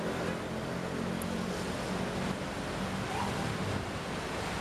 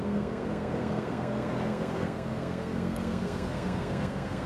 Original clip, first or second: first